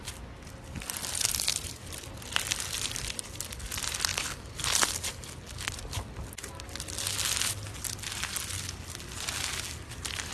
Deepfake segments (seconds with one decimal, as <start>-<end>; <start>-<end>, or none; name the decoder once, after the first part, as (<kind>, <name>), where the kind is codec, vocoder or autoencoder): none